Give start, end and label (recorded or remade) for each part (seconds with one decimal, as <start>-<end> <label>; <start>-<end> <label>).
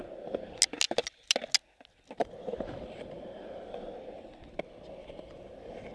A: 0.0-2.2 recorded; 2.2-3.7 remade; 3.7-5.0 recorded; 5.0-5.9 remade